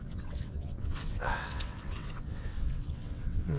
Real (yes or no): no